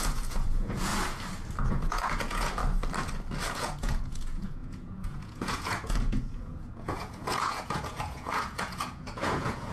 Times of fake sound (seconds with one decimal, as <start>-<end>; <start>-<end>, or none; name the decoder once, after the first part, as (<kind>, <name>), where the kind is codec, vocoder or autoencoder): 0.0-0.9 (vocoder, Vocos); 1.7-2.6; 3.5-9.7